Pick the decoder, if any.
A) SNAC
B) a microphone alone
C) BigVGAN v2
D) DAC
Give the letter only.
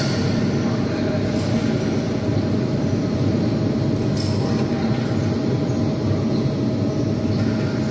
B